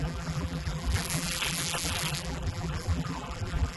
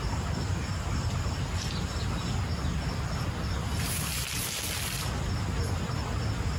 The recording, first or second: second